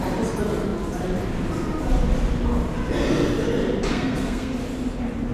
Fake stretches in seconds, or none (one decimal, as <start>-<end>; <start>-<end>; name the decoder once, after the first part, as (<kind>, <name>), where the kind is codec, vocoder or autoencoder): 3.9-4.5 (codec, SNAC)